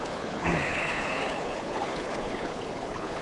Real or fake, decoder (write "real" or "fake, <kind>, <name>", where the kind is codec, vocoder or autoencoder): fake, codec, HILCodec